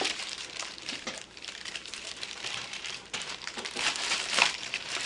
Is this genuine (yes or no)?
no